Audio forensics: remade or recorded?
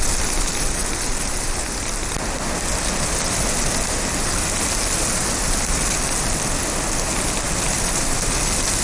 recorded